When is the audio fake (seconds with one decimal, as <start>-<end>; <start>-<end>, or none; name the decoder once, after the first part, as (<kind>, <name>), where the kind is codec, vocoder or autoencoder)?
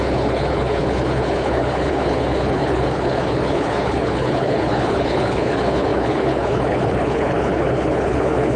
0.0-8.6 (codec, HILCodec)